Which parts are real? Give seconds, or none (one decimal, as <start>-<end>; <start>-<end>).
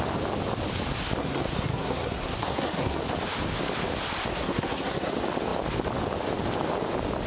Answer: 0.0-1.2; 3.0-4.3; 5.1-7.3